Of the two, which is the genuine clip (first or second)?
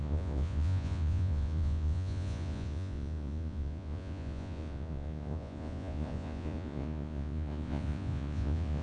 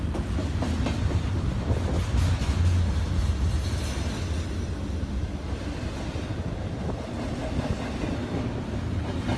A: second